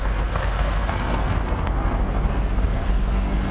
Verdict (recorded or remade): remade